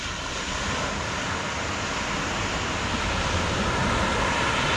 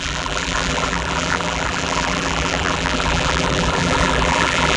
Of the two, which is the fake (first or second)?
second